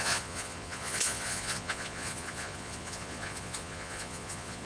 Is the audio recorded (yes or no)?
no